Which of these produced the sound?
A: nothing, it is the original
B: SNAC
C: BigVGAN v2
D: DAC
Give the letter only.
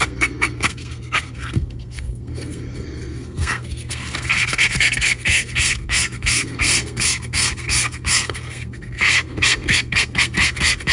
B